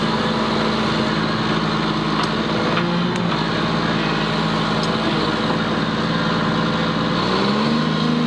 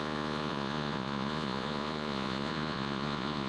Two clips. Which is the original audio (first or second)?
first